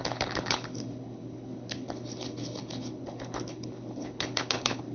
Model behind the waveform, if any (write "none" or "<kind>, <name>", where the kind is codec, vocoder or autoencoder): codec, HILCodec